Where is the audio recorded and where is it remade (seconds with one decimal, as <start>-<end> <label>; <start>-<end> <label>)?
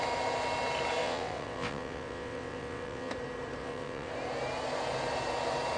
0.0-1.0 recorded; 1.0-3.1 remade; 3.1-3.6 recorded; 3.6-4.1 remade; 4.1-5.8 recorded